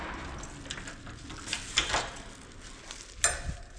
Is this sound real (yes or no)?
yes